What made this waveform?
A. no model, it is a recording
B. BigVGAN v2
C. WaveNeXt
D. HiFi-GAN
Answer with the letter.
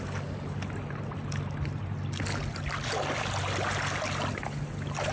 A